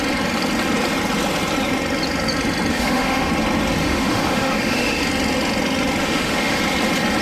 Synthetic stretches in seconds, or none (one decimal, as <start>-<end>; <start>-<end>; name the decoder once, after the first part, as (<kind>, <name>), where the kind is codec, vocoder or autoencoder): 2.7-3.3 (autoencoder, DAC-VAE); 3.8-5.0; 6.0-6.6